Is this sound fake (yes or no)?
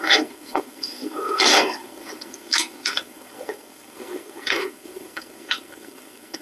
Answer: yes